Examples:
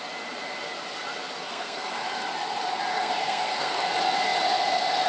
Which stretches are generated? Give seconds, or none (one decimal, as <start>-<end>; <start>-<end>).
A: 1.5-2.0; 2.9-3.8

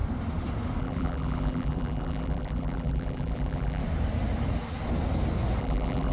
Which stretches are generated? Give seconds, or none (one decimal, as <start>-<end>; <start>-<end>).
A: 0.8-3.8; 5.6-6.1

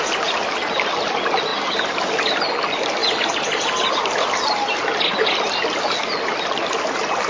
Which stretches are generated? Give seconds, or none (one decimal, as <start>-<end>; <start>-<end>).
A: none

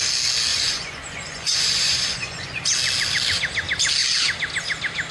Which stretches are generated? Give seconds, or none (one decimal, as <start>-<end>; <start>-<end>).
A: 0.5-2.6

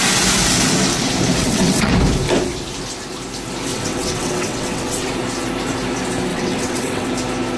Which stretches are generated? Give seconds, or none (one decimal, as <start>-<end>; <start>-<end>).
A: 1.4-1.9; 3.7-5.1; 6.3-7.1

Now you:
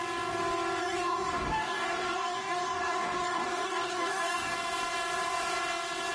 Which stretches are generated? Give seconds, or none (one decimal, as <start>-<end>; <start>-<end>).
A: 0.8-4.5

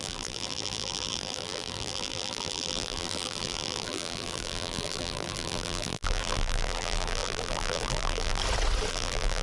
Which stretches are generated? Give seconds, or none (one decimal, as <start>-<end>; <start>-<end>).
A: 0.0-8.4; 8.9-9.4

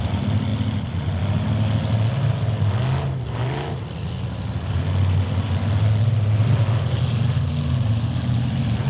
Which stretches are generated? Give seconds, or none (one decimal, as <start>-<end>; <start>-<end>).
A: none